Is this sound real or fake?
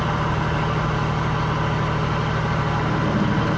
real